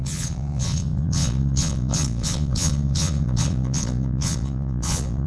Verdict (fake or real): fake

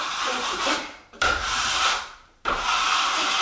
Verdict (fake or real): fake